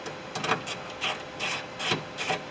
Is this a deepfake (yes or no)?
no